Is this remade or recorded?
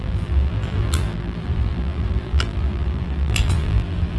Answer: remade